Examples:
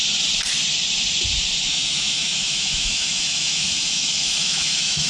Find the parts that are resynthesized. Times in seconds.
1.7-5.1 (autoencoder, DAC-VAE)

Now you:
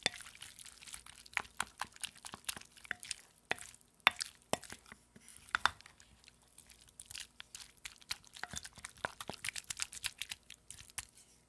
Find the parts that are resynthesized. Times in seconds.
none

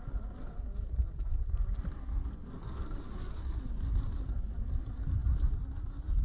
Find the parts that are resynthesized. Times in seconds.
none

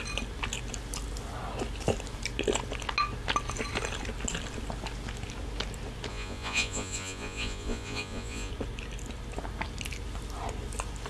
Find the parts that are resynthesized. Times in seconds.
6.1-8.5 (vocoder, Vocos)

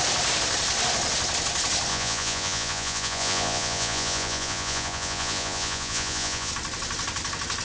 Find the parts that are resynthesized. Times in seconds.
1.9-6.5 (vocoder, Vocos)

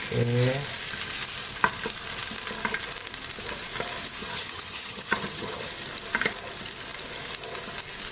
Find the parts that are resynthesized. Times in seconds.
4.2-5.7 (vocoder, HiFi-GAN)

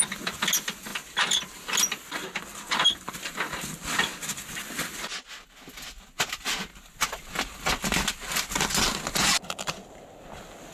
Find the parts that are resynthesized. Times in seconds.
none